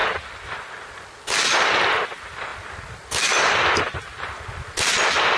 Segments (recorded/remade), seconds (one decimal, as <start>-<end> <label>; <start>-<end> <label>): 0.0-5.4 recorded